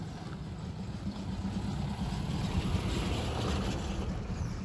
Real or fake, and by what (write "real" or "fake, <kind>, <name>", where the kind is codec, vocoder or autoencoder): real